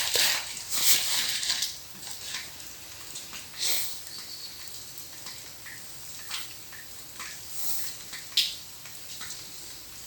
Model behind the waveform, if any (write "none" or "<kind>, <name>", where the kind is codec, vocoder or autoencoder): none